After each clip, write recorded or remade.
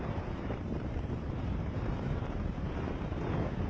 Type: remade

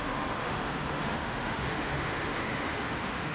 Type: remade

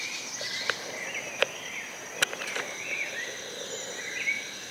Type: remade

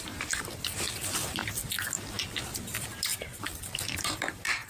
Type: remade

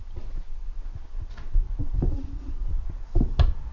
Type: recorded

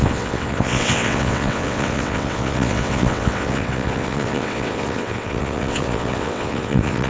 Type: remade